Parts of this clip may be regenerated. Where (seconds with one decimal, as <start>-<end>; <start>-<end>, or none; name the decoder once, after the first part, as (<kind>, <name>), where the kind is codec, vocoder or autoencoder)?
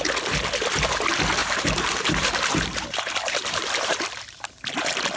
1.4-4.0 (vocoder, BigVGAN v2)